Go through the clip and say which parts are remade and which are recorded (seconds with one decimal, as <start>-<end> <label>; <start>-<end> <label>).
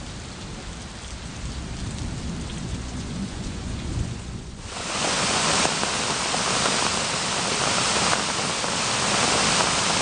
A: 0.0-2.5 recorded; 2.5-5.5 remade; 5.5-10.0 recorded